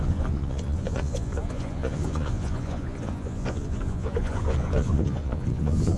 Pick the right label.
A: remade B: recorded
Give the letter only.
A